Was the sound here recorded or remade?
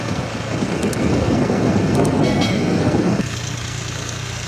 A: remade